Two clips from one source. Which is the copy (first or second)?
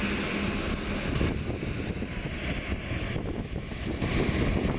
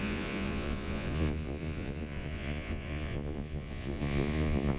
second